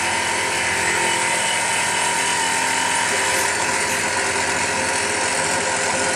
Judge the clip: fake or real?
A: real